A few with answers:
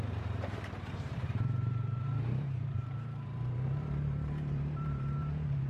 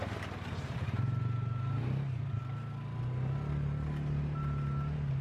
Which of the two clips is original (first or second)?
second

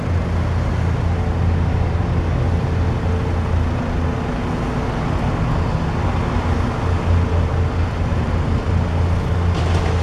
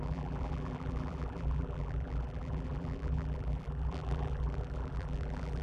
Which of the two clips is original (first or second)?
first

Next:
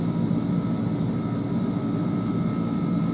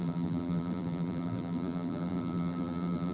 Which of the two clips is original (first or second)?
first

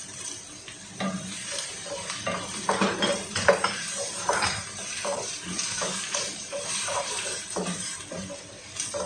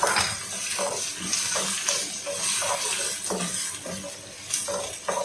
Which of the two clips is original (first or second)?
second